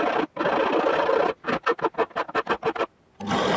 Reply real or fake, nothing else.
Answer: real